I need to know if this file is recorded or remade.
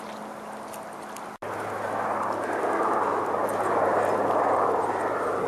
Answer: recorded